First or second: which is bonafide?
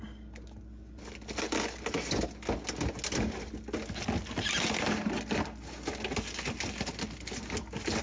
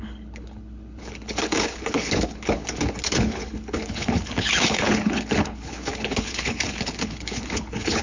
first